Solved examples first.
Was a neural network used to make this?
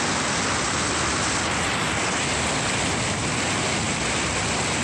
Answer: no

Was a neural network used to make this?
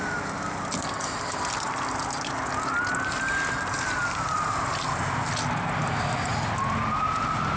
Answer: no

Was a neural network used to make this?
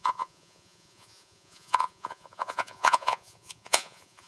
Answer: yes